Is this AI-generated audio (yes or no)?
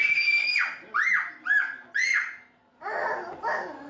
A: no